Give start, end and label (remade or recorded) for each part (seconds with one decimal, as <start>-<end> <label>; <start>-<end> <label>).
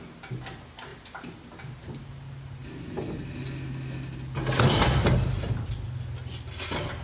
0.0-7.0 recorded